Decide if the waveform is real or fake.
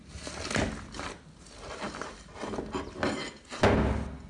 real